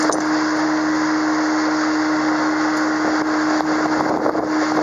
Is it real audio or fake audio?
real